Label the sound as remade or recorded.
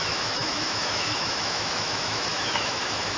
remade